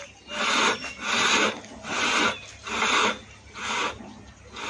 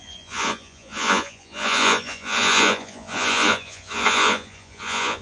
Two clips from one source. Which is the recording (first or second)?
first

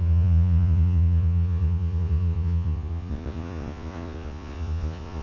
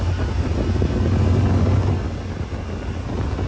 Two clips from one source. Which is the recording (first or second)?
second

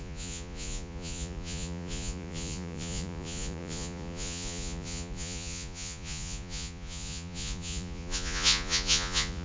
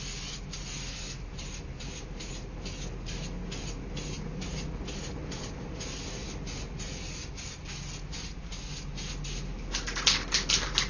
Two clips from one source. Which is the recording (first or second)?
second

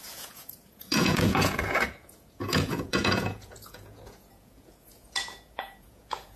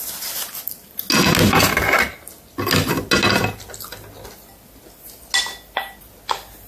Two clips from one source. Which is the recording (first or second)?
second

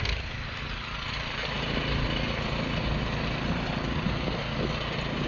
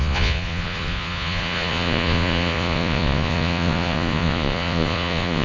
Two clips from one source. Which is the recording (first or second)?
first